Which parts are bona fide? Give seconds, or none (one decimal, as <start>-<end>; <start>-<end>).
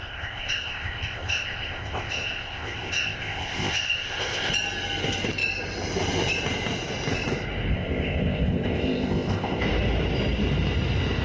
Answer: 4.5-7.7; 9.6-11.2